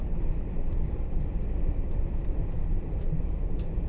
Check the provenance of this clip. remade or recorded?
remade